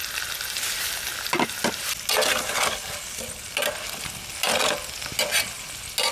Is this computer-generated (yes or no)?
no